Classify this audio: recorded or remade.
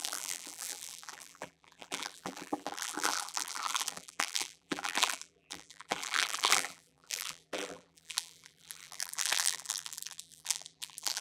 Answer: remade